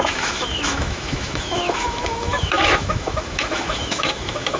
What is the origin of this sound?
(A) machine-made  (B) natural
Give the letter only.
A